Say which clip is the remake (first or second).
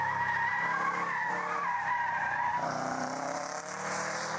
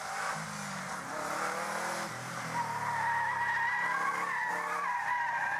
first